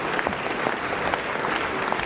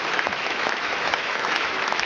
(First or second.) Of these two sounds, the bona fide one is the first